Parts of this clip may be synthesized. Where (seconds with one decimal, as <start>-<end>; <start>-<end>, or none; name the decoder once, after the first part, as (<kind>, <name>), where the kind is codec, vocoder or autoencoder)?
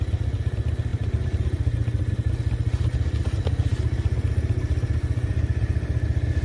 none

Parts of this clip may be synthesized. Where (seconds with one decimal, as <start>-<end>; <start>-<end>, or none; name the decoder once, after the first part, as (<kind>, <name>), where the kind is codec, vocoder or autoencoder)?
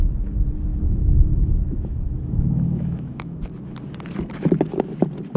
0.7-3.4 (autoencoder, DAC-VAE)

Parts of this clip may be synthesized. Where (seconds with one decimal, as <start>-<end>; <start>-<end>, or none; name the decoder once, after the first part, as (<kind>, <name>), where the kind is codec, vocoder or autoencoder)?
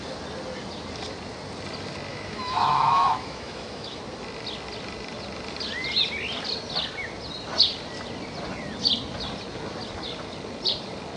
2.1-4.0 (autoencoder, DAC-VAE)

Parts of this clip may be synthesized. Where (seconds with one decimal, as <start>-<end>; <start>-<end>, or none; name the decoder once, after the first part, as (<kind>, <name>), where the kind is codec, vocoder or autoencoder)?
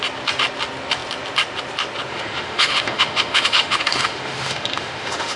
2.1-5.4 (autoencoder, DAC-VAE)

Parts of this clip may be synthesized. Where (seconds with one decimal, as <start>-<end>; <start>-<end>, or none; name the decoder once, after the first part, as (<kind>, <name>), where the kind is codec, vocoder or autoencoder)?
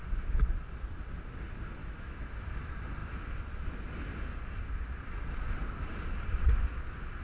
1.8-2.4 (autoencoder, DAC-VAE)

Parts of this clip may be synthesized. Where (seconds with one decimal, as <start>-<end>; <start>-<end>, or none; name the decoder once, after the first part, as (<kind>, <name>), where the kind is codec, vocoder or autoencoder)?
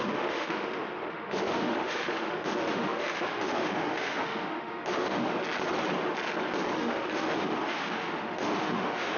0.0-5.3 (autoencoder, DAC-VAE); 6.8-9.2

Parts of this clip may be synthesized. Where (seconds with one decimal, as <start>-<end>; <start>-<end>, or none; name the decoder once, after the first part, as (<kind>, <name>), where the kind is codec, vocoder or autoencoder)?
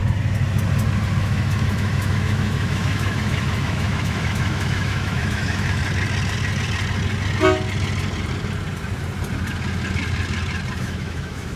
1.2-5.8 (autoencoder, DAC-VAE); 10.8-11.6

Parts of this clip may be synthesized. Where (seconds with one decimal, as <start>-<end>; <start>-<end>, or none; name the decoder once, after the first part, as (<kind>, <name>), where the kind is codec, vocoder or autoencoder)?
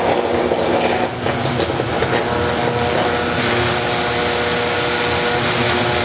none